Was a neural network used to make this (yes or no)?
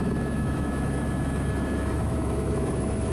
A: yes